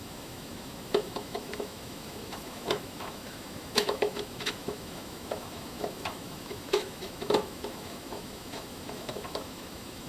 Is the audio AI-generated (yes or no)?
yes